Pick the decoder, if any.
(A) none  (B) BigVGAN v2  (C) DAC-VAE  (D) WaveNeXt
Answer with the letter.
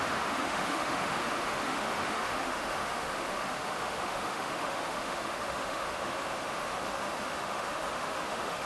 C